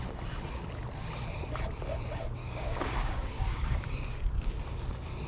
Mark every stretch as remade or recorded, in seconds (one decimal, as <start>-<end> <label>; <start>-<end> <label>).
0.0-2.4 recorded; 2.4-4.5 remade; 4.5-5.3 recorded